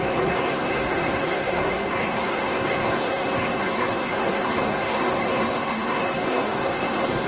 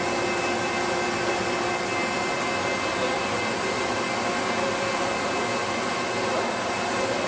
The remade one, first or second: first